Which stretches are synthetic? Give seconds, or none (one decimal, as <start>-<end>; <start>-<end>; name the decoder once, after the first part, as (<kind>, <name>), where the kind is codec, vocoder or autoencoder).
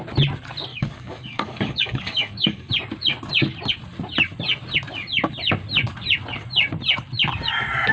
0.7-2.7 (codec, DAC)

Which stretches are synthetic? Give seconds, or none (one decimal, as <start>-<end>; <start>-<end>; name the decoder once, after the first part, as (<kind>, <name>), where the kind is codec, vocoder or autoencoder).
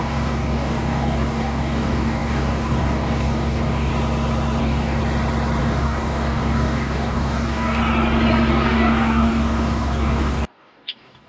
0.0-3.9 (codec, DAC); 4.6-5.0; 5.6-7.8; 8.5-11.3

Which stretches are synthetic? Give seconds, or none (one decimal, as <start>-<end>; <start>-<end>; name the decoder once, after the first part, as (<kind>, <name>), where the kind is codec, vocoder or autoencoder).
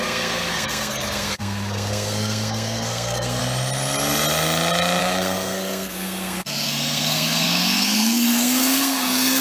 0.0-3.4 (codec, SNAC); 5.0-9.4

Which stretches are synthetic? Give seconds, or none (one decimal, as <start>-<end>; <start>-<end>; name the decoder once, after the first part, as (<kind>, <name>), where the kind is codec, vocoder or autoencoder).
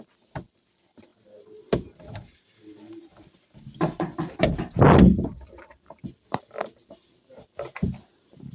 none